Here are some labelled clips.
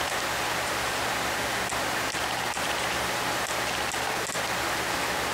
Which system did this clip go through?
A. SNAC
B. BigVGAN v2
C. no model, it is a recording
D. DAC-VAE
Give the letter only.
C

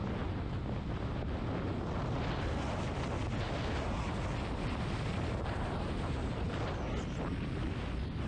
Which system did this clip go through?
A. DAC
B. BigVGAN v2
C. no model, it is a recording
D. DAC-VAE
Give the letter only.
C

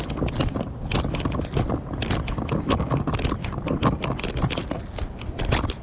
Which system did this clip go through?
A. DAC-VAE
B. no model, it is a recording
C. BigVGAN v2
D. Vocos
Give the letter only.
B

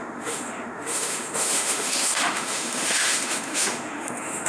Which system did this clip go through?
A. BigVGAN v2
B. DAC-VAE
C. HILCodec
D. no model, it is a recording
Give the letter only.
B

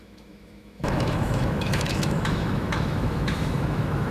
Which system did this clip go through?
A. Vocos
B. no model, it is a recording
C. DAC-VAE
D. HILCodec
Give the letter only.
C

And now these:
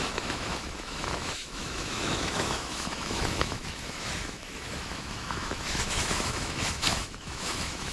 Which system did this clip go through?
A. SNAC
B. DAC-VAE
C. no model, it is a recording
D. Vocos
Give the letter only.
B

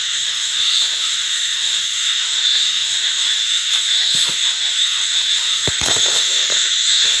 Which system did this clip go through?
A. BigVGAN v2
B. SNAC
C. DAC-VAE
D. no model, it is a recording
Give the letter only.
C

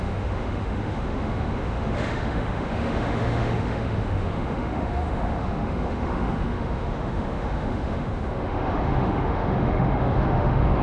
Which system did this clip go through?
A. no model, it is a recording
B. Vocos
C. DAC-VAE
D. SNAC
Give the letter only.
C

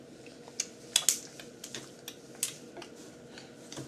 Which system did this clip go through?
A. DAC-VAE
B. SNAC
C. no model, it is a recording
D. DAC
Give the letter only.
C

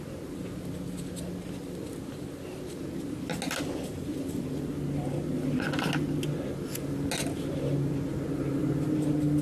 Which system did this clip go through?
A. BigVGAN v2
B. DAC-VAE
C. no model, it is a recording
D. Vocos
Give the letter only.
C